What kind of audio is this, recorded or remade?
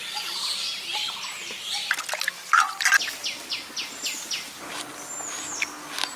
recorded